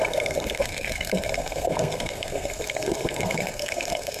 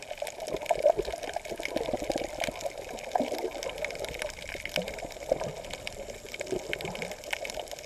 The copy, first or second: first